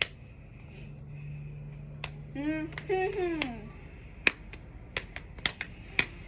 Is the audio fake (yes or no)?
no